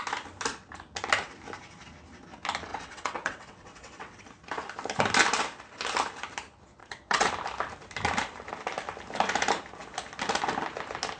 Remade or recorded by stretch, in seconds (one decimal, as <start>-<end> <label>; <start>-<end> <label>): 0.0-2.7 recorded; 2.7-4.2 remade; 4.2-6.8 recorded; 6.8-7.3 remade; 7.3-11.2 recorded